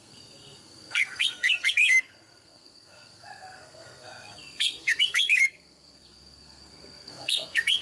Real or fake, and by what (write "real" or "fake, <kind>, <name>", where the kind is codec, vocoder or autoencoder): fake, codec, SNAC